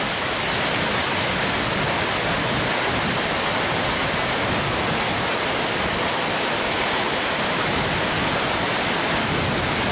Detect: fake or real real